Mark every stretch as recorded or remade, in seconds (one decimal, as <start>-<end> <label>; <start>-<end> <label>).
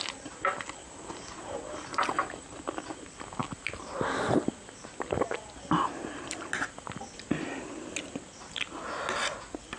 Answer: 0.0-9.8 recorded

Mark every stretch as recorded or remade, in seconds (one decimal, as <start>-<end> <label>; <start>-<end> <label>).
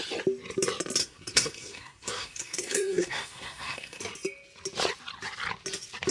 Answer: 0.0-1.0 recorded; 1.0-4.0 remade; 4.0-6.1 recorded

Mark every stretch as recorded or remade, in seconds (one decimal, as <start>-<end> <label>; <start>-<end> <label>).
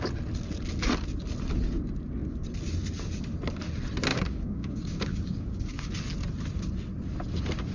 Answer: 0.0-4.1 recorded; 4.1-5.9 remade; 5.9-7.7 recorded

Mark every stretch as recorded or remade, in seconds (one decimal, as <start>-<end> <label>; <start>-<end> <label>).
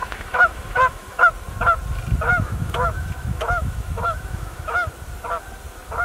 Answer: 0.0-1.2 remade; 1.2-2.3 recorded; 2.3-4.9 remade; 4.9-6.0 recorded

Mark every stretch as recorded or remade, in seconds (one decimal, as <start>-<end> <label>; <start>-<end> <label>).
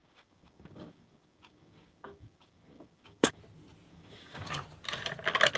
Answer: 0.0-3.4 remade; 3.4-3.9 recorded; 3.9-4.5 remade; 4.5-5.6 recorded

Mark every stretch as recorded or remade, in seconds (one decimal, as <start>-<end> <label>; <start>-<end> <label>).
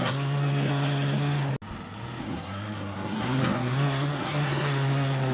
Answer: 0.0-1.5 remade; 1.5-2.2 recorded; 2.2-5.3 remade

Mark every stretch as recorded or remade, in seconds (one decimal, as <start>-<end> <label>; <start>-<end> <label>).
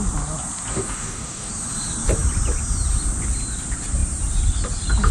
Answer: 0.0-0.7 recorded; 0.7-1.5 remade; 1.5-5.1 recorded